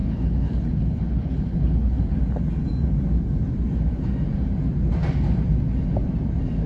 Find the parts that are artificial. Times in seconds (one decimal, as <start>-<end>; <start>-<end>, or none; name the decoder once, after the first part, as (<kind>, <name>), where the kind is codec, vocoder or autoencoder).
0.0-2.0 (codec, HILCodec)